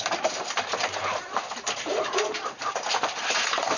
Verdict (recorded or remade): remade